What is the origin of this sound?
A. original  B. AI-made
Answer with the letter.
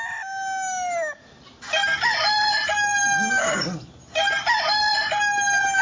A